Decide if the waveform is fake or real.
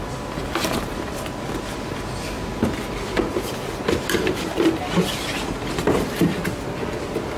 real